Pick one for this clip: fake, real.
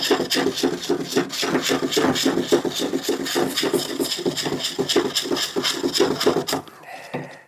real